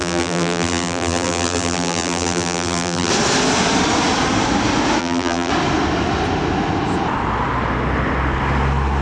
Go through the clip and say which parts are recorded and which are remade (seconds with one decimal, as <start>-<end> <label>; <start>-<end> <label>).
0.0-3.1 remade; 3.1-5.0 recorded; 5.0-5.5 remade; 5.5-9.0 recorded